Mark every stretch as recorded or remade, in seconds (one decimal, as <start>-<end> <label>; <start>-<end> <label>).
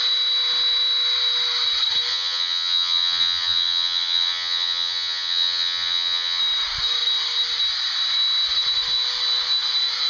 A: 0.0-2.1 recorded; 2.1-6.4 remade; 6.4-10.1 recorded